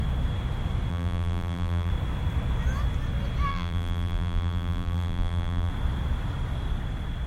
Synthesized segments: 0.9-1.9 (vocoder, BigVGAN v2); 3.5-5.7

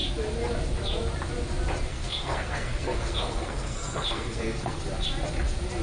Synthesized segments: 1.9-4.8 (codec, SNAC)

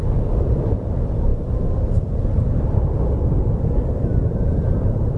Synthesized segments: 4.1-4.7 (vocoder, Vocos)

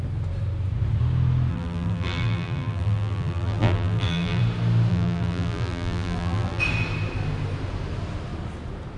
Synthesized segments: 1.5-4.4 (vocoder, BigVGAN v2); 4.9-6.6

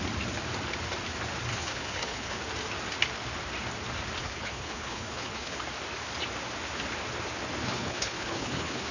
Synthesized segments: 1.5-2.4 (codec, HILCodec); 4.2-5.6; 7.6-8.9